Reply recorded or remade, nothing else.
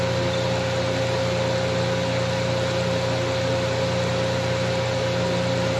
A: recorded